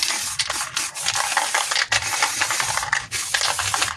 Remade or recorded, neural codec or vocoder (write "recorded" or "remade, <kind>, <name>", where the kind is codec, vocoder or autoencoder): recorded